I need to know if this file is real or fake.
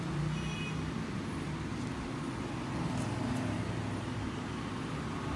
real